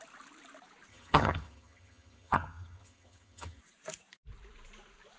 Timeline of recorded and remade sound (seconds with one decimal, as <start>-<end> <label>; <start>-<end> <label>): 0.0-0.9 recorded; 0.9-3.6 remade; 3.6-5.2 recorded